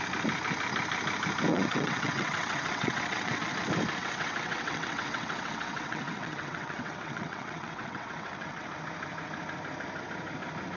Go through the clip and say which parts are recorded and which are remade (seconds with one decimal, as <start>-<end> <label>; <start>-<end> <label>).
0.0-1.5 recorded; 1.5-3.4 remade; 3.4-4.0 recorded; 4.0-8.7 remade; 8.7-10.8 recorded

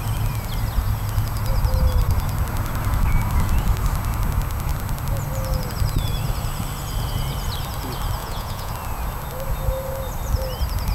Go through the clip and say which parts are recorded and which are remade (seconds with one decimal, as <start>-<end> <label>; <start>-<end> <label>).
0.0-8.2 recorded; 8.2-8.7 remade; 8.7-10.9 recorded